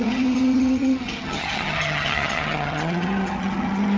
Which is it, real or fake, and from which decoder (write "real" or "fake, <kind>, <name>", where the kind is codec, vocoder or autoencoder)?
fake, vocoder, HiFi-GAN